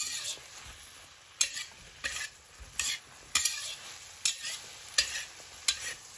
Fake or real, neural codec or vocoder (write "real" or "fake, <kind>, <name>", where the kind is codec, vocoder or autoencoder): real